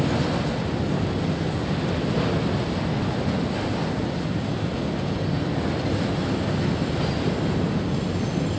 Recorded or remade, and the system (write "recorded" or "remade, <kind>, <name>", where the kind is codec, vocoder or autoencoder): recorded